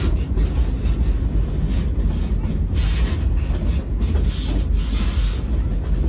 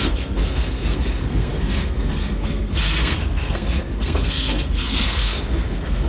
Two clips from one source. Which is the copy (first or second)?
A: second